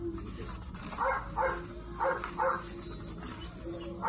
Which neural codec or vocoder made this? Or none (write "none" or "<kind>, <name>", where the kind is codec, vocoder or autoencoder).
none